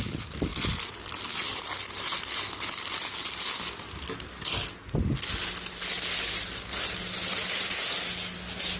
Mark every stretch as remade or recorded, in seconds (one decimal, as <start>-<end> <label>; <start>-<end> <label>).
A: 0.0-8.8 recorded